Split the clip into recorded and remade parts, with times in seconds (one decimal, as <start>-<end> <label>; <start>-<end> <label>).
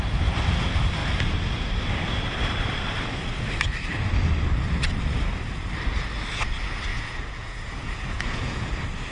0.0-6.9 recorded; 6.9-8.7 remade; 8.7-9.1 recorded